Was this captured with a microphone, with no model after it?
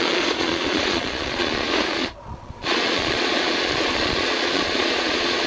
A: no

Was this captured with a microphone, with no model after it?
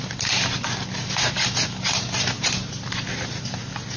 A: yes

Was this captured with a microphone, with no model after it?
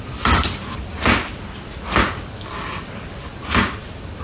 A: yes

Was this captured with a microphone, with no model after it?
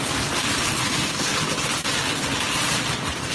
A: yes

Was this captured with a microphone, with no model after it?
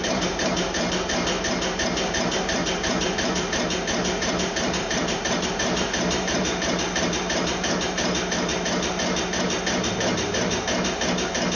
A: no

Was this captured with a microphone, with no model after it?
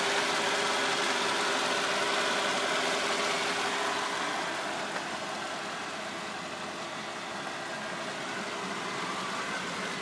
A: yes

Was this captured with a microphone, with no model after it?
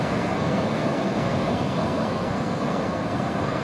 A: no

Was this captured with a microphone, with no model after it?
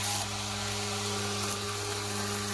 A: yes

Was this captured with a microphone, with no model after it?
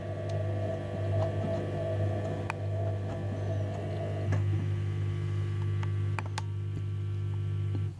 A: yes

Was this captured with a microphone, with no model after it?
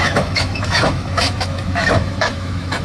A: no